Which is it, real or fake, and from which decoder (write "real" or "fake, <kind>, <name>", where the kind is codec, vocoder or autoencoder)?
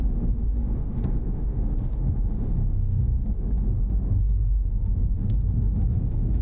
fake, autoencoder, DAC-VAE